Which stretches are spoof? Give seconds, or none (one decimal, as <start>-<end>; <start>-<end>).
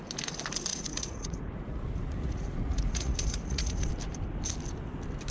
0.7-3.9